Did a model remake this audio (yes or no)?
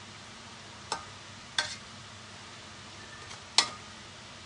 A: no